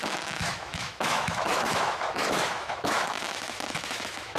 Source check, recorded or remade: remade